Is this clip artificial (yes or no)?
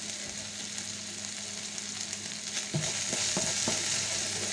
no